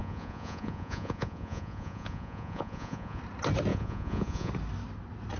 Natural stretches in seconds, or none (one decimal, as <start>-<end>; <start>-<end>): 3.2-3.7; 4.5-5.4